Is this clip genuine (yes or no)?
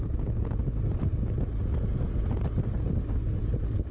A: yes